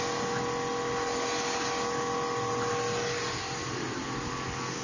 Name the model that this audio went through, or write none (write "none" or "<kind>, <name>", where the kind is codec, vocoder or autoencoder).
none